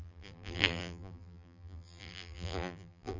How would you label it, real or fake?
fake